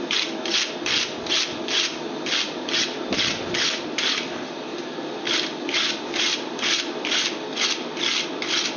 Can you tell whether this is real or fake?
real